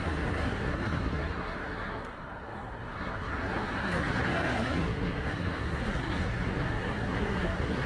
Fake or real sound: fake